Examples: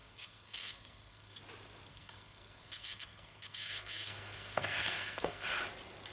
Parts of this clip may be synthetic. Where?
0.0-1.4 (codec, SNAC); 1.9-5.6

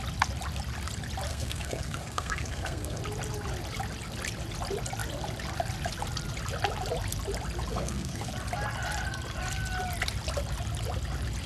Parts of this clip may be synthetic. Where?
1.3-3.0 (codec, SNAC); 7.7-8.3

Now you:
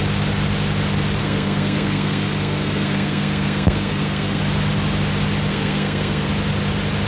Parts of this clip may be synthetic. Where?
1.2-4.4 (codec, SNAC); 5.5-6.3